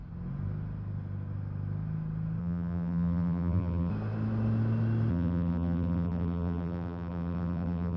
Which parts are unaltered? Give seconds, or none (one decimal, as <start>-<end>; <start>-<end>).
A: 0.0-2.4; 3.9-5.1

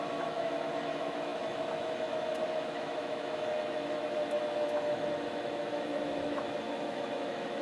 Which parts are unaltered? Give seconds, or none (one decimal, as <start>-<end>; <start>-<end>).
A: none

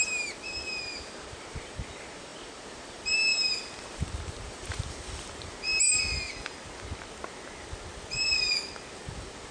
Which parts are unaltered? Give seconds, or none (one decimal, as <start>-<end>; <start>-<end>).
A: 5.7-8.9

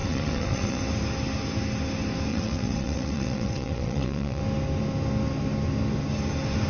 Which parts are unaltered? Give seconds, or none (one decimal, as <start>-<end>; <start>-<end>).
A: 0.8-2.3; 4.4-6.7

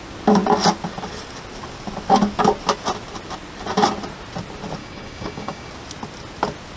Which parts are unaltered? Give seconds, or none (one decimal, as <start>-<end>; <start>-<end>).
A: 0.0-4.8; 5.7-6.8

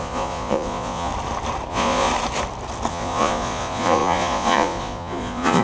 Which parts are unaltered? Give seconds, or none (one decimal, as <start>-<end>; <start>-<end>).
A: 1.1-1.7; 2.1-2.9

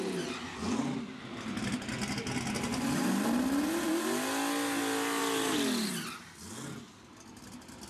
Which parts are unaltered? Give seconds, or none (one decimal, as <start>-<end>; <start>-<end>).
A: 0.0-7.9